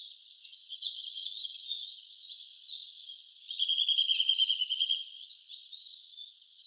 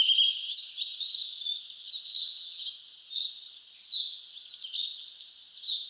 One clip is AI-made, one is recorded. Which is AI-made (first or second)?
first